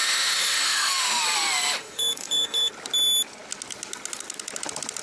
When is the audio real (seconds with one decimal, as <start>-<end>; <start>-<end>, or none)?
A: 1.2-1.8; 2.7-5.0